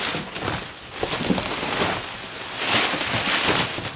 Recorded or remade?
recorded